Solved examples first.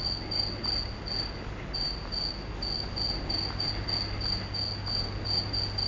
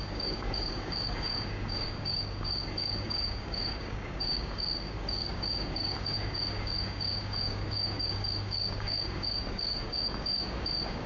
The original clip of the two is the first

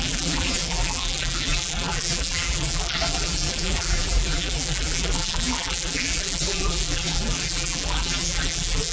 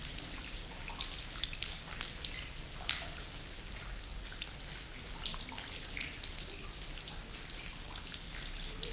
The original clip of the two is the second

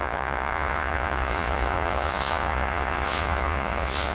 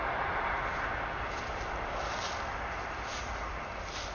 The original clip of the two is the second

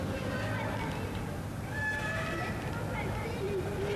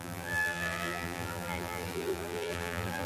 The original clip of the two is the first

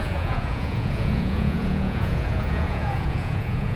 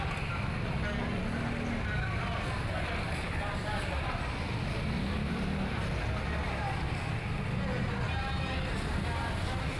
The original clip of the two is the second